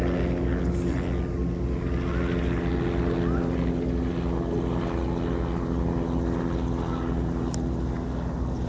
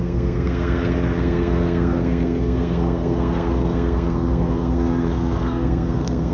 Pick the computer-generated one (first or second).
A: second